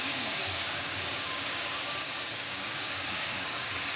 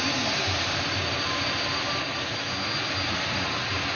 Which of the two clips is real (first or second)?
second